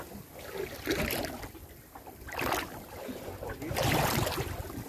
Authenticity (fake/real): real